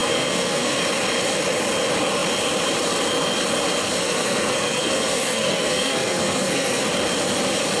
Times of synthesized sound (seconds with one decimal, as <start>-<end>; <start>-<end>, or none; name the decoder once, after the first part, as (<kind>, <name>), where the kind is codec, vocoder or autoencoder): 0.0-0.8 (codec, SNAC); 3.8-6.8